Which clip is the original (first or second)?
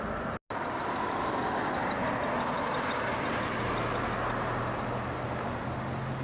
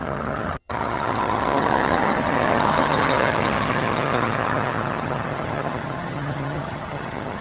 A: first